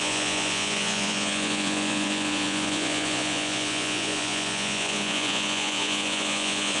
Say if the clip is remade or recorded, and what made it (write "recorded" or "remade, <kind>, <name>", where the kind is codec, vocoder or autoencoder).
remade, vocoder, Vocos